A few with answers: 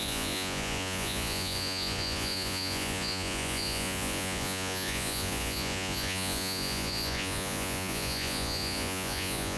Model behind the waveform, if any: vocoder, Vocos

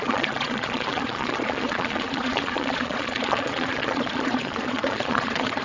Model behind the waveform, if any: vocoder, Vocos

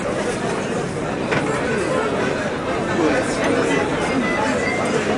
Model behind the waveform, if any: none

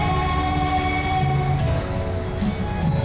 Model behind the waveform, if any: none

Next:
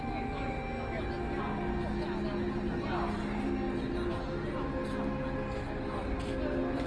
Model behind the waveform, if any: none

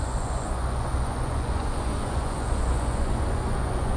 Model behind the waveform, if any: vocoder, Vocos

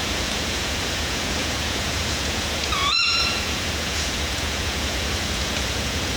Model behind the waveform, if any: vocoder, Vocos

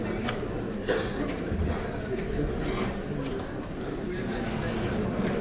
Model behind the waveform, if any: none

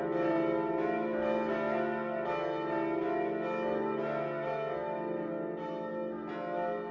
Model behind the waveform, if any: none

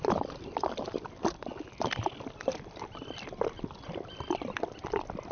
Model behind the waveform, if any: none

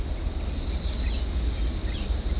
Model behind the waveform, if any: none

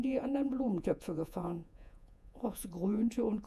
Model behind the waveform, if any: vocoder, Vocos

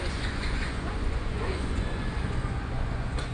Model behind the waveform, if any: vocoder, Vocos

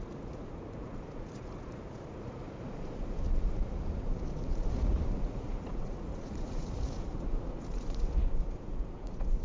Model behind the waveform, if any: vocoder, Vocos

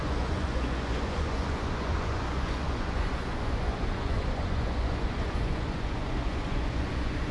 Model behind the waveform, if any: vocoder, Vocos